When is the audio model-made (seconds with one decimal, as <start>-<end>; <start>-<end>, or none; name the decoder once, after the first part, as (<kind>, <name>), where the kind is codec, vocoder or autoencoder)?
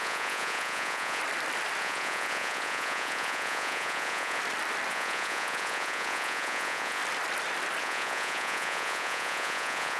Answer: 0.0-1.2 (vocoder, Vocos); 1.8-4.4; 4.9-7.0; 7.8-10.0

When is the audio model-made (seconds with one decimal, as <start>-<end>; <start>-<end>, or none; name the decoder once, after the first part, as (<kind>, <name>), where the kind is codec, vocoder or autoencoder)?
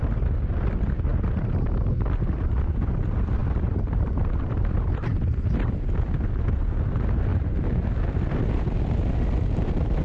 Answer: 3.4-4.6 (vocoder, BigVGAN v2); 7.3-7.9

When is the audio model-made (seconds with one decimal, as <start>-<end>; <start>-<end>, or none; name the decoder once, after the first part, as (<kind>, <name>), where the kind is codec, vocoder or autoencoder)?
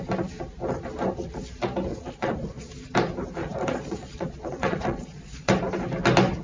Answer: 1.9-2.7 (vocoder, Vocos); 3.4-5.5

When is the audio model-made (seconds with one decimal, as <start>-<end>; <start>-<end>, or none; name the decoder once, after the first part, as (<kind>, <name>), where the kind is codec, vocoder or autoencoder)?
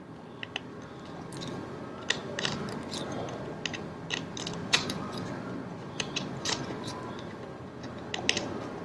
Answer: 4.6-7.1 (vocoder, Vocos)